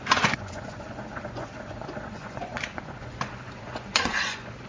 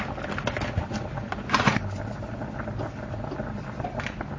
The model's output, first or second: first